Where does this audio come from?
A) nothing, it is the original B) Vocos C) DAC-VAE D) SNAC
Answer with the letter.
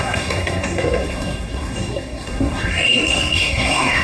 D